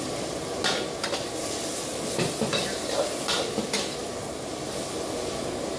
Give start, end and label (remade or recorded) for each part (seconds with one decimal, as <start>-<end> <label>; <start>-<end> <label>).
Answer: 0.0-5.8 recorded